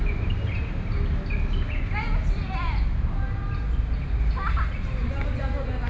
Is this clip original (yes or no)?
yes